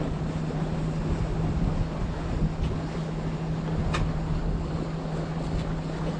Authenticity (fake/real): real